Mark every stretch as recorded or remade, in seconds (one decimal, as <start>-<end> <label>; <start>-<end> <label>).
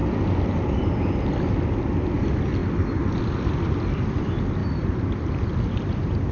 0.0-4.6 recorded; 4.6-5.3 remade; 5.3-6.3 recorded